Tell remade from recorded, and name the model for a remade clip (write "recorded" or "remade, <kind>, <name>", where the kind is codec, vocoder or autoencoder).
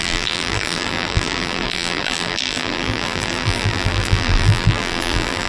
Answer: remade, vocoder, BigVGAN v2